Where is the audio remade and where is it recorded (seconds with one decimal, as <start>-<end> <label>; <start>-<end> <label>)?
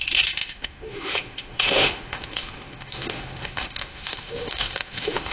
0.0-5.3 remade